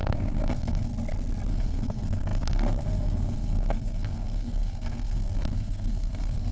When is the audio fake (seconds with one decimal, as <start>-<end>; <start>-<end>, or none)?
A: 0.0-0.9; 1.5-6.5